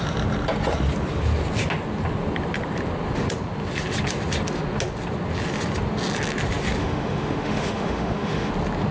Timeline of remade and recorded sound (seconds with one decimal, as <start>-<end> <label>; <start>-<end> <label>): 0.0-6.8 recorded; 6.8-8.5 remade; 8.5-8.9 recorded